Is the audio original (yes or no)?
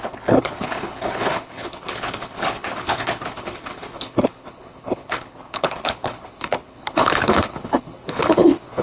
no